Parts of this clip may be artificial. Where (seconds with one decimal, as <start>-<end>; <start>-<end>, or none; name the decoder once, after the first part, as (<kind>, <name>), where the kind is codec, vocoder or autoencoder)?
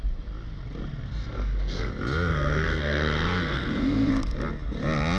1.2-1.9 (codec, SNAC); 2.3-4.1